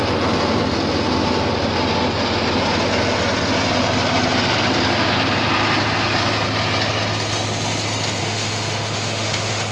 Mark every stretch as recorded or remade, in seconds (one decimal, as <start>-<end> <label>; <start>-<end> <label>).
0.0-8.2 recorded; 8.2-9.7 remade